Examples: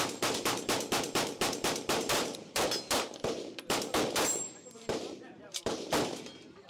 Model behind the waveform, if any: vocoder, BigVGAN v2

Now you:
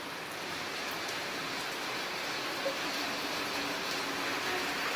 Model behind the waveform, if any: none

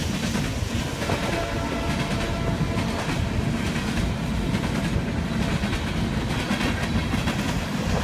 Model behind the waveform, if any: none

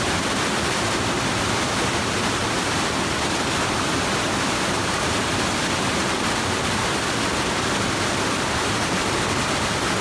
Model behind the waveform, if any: vocoder, BigVGAN v2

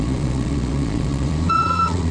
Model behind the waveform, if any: vocoder, Vocos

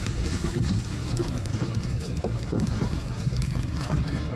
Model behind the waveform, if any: codec, SNAC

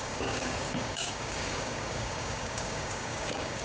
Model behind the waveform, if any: codec, DAC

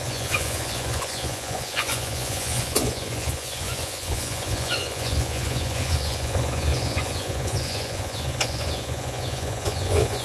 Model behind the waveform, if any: vocoder, Vocos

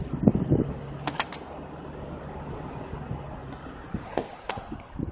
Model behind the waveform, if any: none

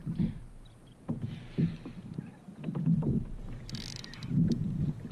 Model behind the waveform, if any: vocoder, BigVGAN v2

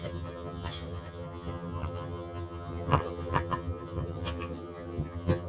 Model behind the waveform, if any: vocoder, HiFi-GAN